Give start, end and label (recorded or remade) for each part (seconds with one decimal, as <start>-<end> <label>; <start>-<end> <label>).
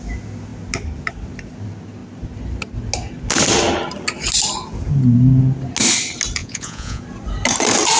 0.0-6.4 recorded; 6.4-7.0 remade; 7.0-8.0 recorded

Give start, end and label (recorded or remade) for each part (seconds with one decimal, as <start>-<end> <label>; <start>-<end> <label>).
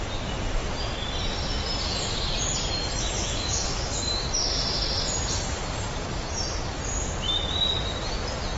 0.0-3.3 recorded; 3.3-3.9 remade; 3.9-8.6 recorded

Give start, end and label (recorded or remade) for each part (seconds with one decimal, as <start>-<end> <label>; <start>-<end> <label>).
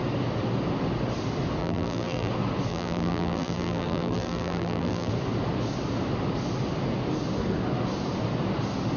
0.0-1.6 recorded; 1.6-2.3 remade; 2.3-2.7 recorded; 2.7-5.1 remade; 5.1-9.0 recorded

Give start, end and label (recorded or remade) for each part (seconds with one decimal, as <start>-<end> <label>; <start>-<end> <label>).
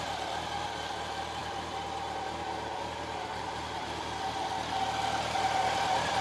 0.0-6.2 recorded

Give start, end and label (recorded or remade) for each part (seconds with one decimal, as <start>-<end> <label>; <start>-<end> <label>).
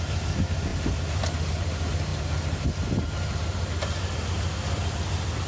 0.0-5.5 recorded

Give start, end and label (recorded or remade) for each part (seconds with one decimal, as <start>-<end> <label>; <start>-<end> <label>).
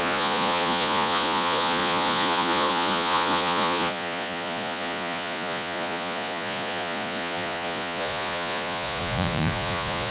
0.0-10.1 remade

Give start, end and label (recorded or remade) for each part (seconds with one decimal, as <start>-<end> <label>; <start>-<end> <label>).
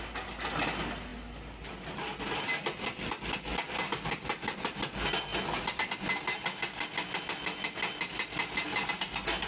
0.0-9.5 recorded